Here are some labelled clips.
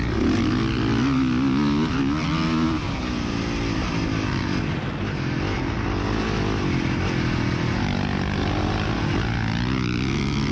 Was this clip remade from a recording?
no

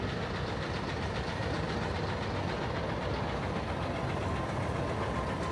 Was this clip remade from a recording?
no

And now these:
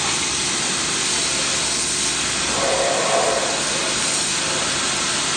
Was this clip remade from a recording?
no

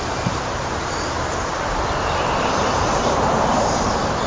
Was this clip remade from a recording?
yes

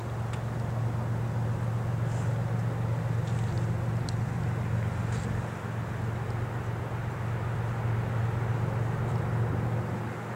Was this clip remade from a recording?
no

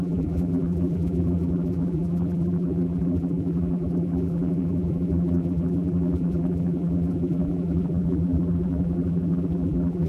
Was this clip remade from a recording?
yes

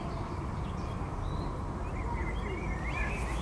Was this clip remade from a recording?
no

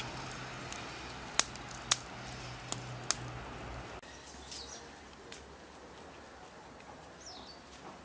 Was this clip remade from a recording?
no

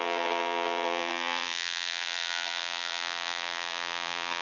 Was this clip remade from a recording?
yes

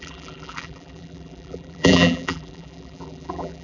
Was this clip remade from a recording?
yes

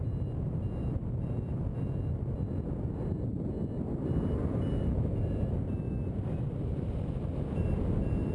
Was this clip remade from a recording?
no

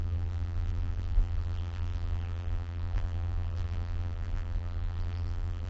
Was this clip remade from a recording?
yes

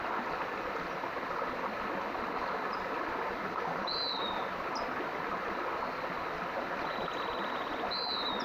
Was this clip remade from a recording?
no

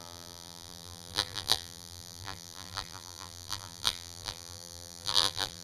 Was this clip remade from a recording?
yes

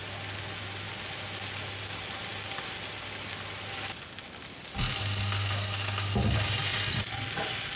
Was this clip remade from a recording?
no